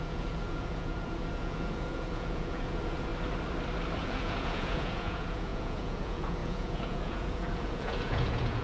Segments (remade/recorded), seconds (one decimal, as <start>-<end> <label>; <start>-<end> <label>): 0.0-3.1 remade; 3.1-4.0 recorded; 4.0-8.6 remade